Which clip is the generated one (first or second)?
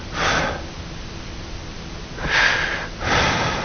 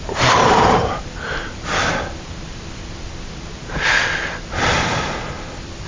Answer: second